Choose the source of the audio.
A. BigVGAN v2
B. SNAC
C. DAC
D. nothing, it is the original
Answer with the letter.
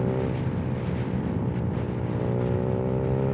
D